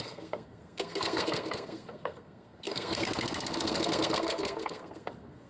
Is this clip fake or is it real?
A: fake